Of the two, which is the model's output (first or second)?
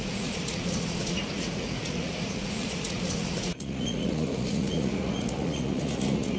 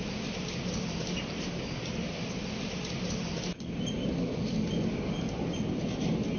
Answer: first